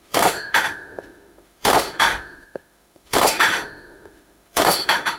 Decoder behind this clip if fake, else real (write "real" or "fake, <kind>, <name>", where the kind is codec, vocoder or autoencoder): fake, autoencoder, DAC-VAE